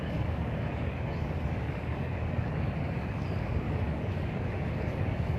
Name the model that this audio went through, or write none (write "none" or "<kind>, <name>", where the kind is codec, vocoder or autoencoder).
codec, DAC